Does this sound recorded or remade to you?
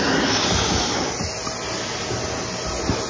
recorded